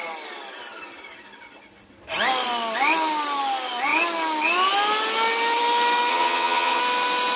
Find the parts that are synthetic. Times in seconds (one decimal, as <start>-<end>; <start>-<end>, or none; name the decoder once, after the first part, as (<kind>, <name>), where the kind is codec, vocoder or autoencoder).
6.1-6.8 (vocoder, HiFi-GAN)